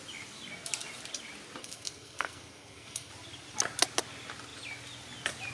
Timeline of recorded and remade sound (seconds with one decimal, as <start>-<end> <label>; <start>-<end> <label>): 0.0-1.6 recorded; 1.6-3.1 remade; 3.1-5.5 recorded